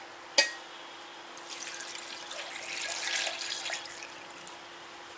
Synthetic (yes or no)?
no